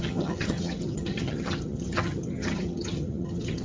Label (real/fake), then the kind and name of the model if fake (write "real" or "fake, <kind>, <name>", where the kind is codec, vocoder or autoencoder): fake, vocoder, HiFi-GAN